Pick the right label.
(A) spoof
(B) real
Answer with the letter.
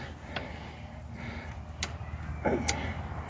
B